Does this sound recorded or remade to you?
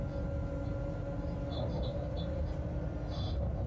recorded